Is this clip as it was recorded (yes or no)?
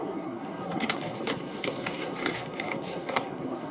no